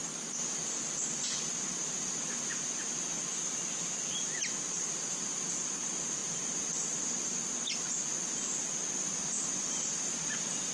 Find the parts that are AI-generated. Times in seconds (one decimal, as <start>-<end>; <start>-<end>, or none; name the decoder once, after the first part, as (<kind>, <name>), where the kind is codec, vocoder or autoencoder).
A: none

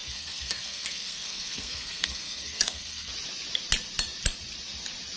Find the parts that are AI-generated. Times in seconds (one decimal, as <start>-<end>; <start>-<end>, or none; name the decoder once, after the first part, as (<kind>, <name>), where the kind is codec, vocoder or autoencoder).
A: 0.0-3.1 (codec, SNAC)